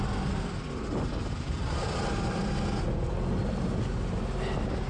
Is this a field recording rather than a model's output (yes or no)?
yes